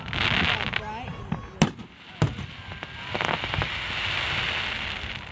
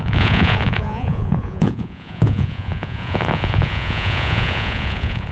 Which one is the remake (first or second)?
second